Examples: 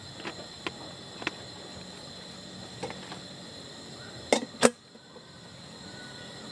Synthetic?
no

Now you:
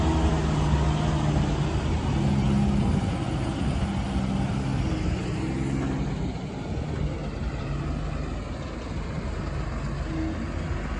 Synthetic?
no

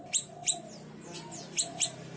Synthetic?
no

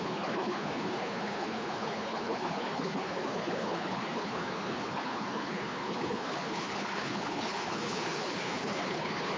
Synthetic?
yes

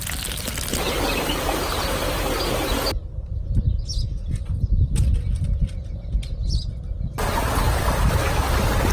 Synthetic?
no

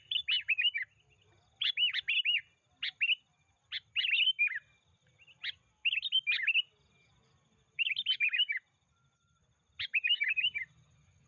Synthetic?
no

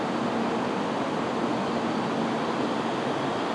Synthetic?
no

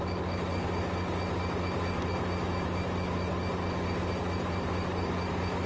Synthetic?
no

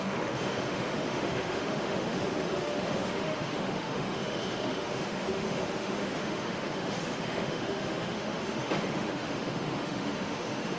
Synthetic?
yes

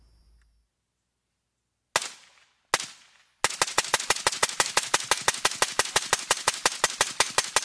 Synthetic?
no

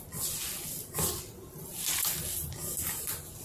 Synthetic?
no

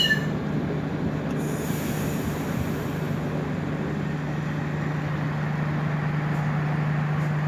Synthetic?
no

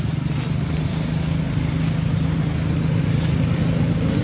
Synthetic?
no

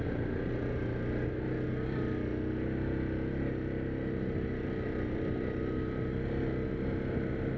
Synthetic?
no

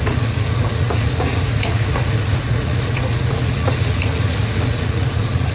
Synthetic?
yes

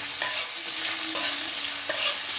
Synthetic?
no